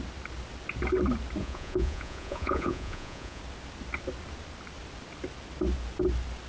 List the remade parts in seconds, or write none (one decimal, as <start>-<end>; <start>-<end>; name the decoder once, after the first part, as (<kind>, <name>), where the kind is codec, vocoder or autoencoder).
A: 1.4-3.4 (vocoder, Vocos)